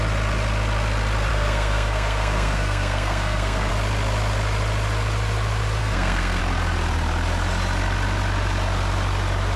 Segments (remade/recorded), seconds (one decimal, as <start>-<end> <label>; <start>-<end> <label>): 0.0-1.3 recorded; 1.3-3.7 remade; 3.7-5.8 recorded; 5.8-6.4 remade; 6.4-9.6 recorded